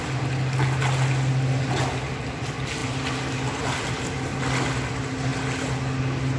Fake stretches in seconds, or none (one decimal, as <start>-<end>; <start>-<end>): none